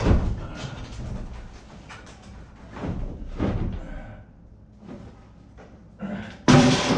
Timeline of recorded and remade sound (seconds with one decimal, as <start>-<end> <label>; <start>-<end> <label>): 0.0-0.9 remade; 0.9-5.1 recorded; 5.1-5.8 remade; 5.8-6.5 recorded; 6.5-7.0 remade